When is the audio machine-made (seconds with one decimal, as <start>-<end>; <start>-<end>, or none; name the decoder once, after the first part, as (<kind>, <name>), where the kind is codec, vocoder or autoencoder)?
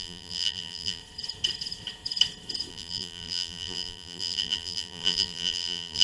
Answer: 0.0-1.0 (vocoder, BigVGAN v2); 2.7-6.0